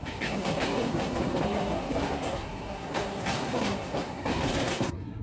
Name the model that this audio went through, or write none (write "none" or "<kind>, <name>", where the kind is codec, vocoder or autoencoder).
codec, SNAC